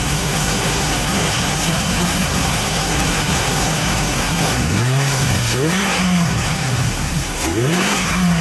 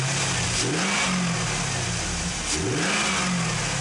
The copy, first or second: first